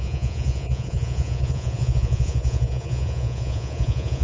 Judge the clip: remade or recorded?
remade